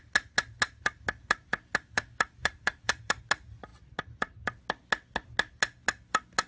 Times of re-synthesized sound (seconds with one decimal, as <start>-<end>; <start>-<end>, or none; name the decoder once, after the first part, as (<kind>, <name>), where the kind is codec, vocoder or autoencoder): 2.4-3.2 (vocoder, BigVGAN v2)